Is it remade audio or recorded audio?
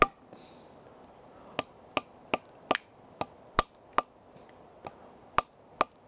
recorded